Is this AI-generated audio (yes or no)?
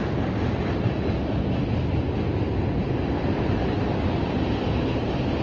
no